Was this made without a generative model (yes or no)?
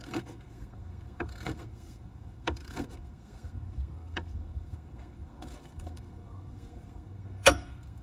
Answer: no